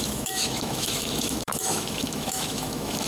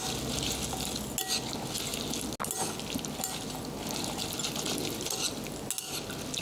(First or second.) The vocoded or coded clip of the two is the first